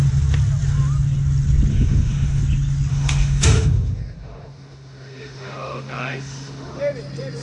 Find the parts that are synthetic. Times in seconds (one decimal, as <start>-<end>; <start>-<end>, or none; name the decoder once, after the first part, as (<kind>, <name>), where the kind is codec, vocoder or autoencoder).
1.7-2.4 (autoencoder, DAC-VAE); 2.9-6.8